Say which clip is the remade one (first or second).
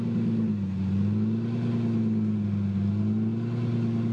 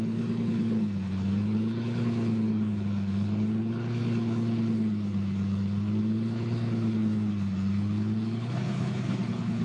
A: second